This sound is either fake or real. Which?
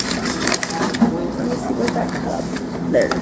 real